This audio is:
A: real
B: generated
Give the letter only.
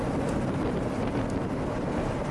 A